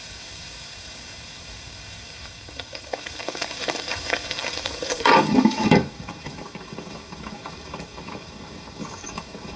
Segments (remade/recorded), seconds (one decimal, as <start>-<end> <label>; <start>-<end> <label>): 0.0-9.6 remade